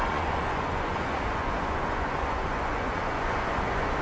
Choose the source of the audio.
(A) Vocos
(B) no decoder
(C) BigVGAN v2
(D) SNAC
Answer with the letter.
A